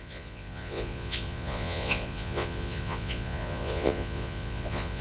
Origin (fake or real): fake